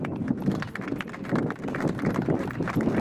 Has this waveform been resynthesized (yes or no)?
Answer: no